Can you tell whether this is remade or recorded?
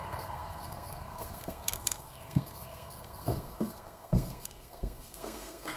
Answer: remade